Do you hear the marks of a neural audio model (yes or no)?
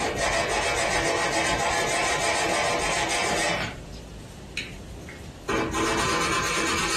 no